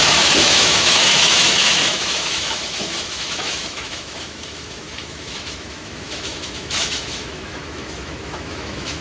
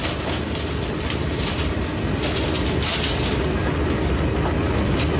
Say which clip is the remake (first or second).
first